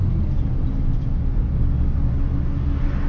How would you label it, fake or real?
real